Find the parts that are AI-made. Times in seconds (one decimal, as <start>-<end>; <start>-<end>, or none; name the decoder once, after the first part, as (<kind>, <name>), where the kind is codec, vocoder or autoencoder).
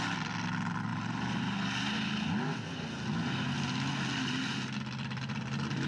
none